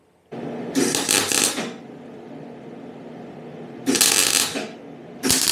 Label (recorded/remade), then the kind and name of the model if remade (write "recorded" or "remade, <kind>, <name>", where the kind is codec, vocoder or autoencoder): recorded